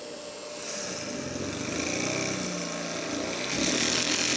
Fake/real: real